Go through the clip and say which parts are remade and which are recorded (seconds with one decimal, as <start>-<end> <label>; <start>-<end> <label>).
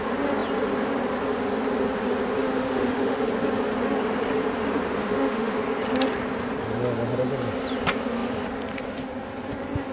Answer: 0.0-2.4 recorded; 2.4-3.3 remade; 3.3-5.0 recorded; 5.0-5.6 remade; 5.6-9.9 recorded